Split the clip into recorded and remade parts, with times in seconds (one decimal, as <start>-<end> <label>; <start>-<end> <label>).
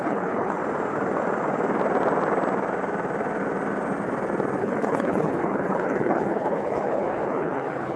0.0-0.6 remade; 0.6-4.6 recorded; 4.6-8.0 remade